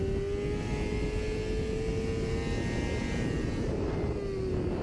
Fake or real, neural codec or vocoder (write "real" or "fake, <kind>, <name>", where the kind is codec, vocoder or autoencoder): real